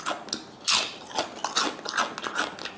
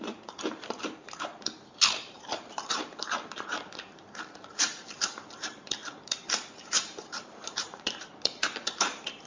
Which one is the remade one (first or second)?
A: second